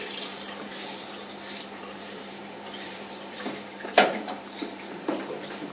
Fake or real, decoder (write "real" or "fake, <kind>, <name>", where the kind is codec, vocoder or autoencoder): fake, vocoder, BigVGAN v2